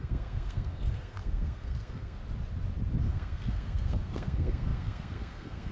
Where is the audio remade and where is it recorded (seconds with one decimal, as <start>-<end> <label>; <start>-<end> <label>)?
0.0-2.2 remade; 2.2-3.0 recorded; 3.0-5.7 remade